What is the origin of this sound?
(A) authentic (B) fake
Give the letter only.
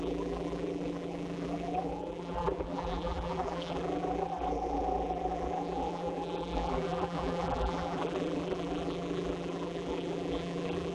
B